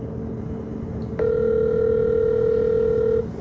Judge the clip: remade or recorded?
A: recorded